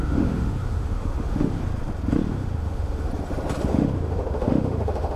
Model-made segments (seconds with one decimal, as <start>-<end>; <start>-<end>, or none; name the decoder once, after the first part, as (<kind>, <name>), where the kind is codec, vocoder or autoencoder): 0.0-1.6 (autoencoder, DAC-VAE); 2.3-3.1; 3.7-5.2